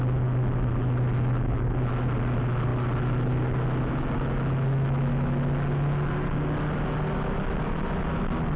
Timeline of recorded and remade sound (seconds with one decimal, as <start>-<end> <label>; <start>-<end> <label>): 0.0-8.6 recorded